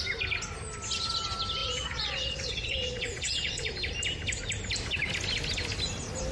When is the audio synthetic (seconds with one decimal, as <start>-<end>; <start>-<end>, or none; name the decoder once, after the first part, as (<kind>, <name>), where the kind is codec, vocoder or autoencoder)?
1.6-3.7 (vocoder, Vocos)